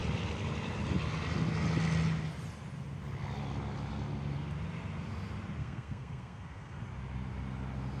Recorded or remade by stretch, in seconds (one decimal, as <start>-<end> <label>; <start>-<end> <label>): 0.0-5.6 recorded; 5.6-6.8 remade; 6.8-8.0 recorded